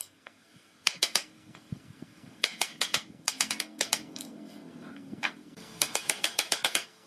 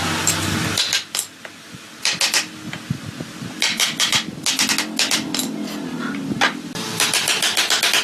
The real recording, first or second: second